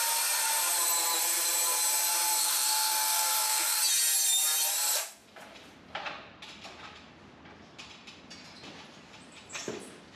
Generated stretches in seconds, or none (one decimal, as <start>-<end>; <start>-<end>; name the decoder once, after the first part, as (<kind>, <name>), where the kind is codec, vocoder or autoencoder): 2.4-3.8 (codec, SNAC)